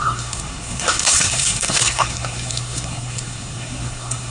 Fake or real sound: fake